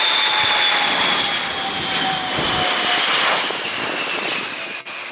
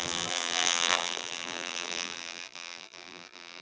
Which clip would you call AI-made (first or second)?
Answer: second